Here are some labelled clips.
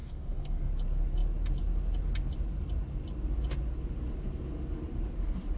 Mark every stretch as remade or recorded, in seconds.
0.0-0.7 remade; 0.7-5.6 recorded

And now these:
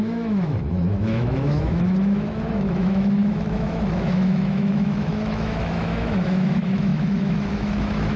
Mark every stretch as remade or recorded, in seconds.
0.0-8.2 remade

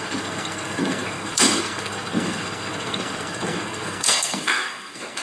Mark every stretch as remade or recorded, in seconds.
0.0-5.2 remade